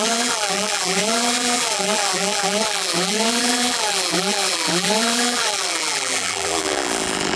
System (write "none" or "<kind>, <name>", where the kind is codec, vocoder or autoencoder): vocoder, BigVGAN v2